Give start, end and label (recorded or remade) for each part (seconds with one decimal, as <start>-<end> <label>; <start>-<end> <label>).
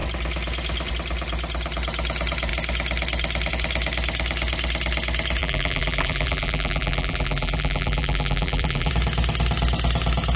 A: 0.0-5.4 recorded; 5.4-8.9 remade; 8.9-10.4 recorded